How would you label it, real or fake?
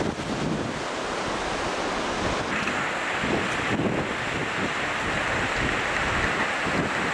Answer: real